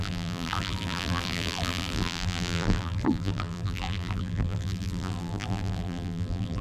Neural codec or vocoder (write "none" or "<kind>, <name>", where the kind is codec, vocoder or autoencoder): vocoder, BigVGAN v2